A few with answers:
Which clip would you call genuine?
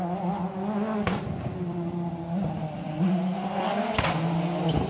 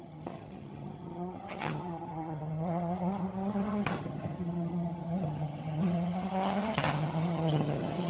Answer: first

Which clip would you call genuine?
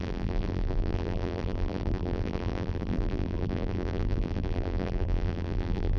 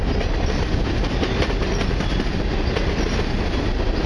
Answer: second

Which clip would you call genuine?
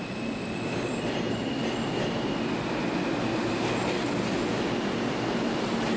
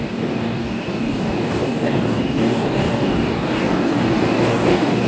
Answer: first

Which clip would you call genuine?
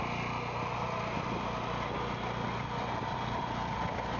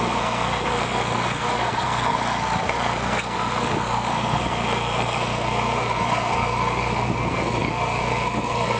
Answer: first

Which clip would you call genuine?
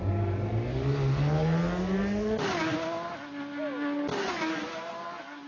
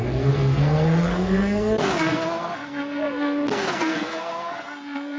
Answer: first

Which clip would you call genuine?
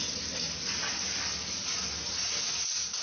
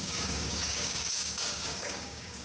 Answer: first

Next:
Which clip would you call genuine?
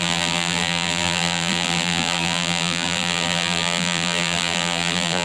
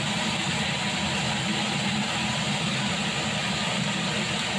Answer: second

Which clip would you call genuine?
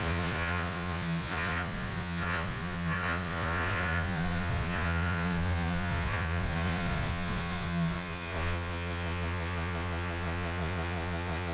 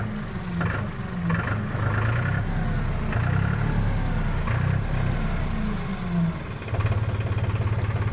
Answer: second